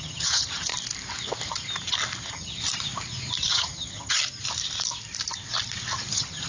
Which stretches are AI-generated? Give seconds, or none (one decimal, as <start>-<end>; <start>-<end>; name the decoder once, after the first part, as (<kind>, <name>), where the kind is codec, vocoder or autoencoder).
0.0-0.7 (vocoder, HiFi-GAN); 2.2-2.6; 3.5-4.2; 6.1-6.5